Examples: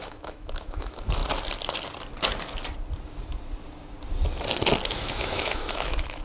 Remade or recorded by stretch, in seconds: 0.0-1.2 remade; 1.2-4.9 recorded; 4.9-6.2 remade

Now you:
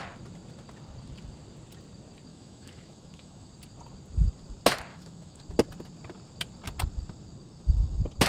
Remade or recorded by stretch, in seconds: 0.0-2.3 recorded; 2.3-3.5 remade; 3.5-4.9 recorded; 4.9-5.4 remade; 5.4-8.3 recorded

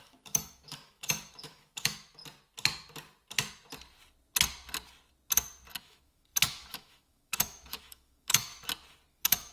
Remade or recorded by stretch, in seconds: 0.0-2.2 remade; 2.2-5.8 recorded; 5.8-8.5 remade; 8.5-9.1 recorded; 9.1-9.5 remade